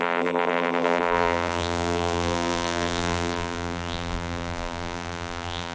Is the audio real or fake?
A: fake